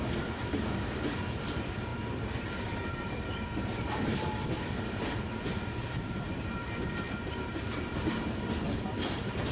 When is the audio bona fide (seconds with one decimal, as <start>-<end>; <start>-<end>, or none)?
none